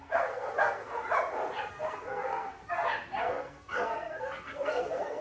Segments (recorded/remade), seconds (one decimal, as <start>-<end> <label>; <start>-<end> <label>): 0.0-0.9 remade; 0.9-1.7 recorded; 1.7-2.6 remade; 2.6-3.2 recorded; 3.2-5.2 remade